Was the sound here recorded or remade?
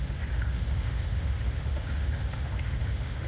remade